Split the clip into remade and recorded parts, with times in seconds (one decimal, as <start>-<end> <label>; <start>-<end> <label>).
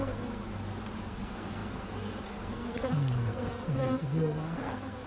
0.0-0.4 remade; 0.4-1.0 recorded; 1.0-5.1 remade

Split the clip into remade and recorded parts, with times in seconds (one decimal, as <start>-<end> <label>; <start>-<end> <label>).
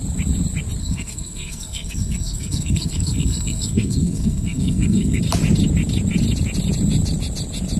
0.0-0.8 recorded; 0.8-5.2 remade; 5.2-7.8 recorded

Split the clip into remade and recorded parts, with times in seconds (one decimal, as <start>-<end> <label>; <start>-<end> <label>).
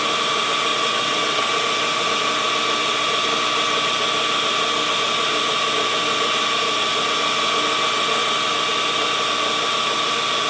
0.0-0.7 recorded; 0.7-1.5 remade; 1.5-10.5 recorded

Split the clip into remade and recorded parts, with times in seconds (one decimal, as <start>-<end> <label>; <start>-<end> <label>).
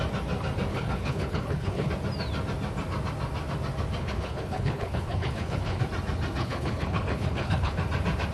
0.0-0.7 recorded; 0.7-1.9 remade; 1.9-4.0 recorded; 4.0-5.8 remade; 5.8-6.4 recorded; 6.4-7.8 remade; 7.8-8.3 recorded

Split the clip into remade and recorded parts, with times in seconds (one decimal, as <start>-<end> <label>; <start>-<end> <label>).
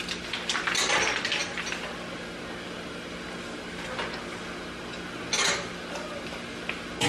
0.0-7.1 recorded